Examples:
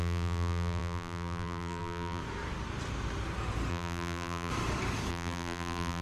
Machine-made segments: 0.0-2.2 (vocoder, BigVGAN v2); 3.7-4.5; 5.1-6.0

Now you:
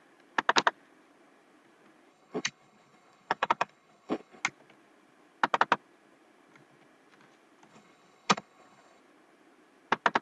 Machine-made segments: 2.1-4.4 (codec, HILCodec); 7.7-9.0

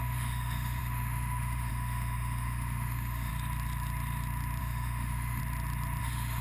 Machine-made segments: 0.0-3.3 (autoencoder, DAC-VAE); 4.6-5.4; 6.0-6.4